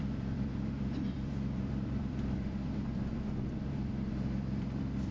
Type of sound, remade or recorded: remade